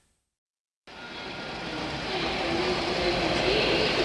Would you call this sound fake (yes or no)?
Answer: no